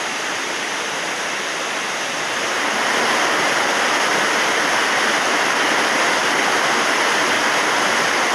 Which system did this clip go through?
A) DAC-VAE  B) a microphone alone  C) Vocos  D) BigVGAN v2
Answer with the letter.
B